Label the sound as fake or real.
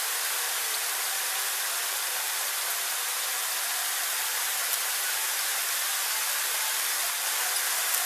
fake